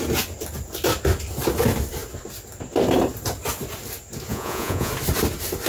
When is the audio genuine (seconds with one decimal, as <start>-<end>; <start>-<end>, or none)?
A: 0.0-4.3; 4.9-5.7